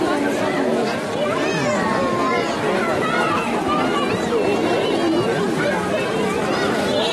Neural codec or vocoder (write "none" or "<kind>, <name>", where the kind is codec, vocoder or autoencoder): none